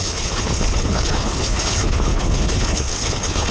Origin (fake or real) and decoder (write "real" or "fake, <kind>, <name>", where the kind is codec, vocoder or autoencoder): fake, codec, HILCodec